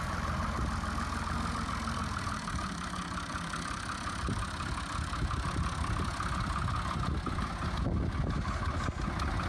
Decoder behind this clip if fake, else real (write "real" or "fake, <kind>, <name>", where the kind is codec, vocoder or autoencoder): real